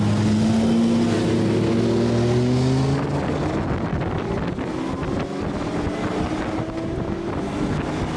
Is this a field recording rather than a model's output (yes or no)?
yes